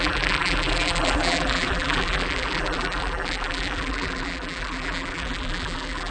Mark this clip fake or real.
fake